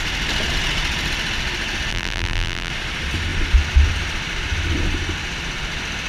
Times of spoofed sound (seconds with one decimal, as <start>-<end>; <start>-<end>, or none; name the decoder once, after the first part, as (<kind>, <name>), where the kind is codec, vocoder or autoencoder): 1.9-2.7 (vocoder, BigVGAN v2)